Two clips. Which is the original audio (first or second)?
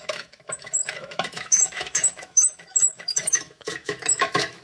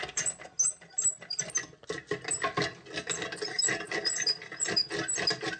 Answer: second